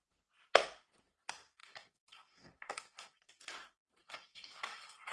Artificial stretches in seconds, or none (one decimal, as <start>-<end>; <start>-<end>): 1.6-3.3; 4.0-5.1